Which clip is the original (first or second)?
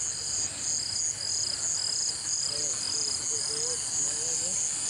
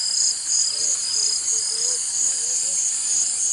first